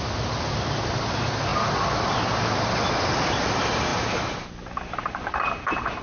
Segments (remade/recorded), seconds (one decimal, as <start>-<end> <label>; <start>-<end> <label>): 0.0-3.9 recorded; 3.9-6.0 remade